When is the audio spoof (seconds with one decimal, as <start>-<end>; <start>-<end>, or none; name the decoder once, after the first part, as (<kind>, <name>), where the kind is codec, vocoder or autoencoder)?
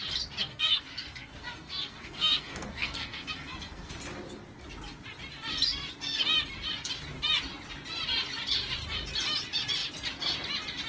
0.4-3.9 (codec, SNAC)